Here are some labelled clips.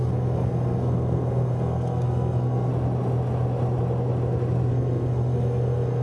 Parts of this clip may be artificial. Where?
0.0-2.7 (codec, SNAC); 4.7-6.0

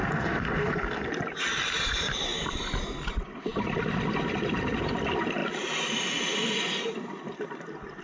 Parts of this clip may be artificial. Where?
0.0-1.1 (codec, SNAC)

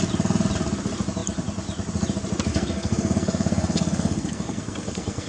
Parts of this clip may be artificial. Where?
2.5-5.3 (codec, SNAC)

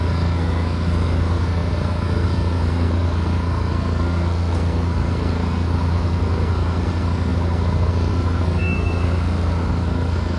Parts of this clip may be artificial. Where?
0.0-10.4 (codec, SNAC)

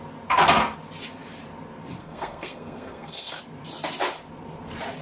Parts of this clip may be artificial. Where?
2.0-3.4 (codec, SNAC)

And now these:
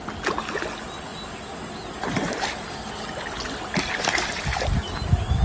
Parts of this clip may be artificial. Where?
none

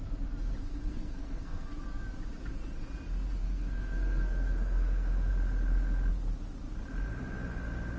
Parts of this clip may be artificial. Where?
0.6-1.8 (codec, SNAC); 3.4-5.3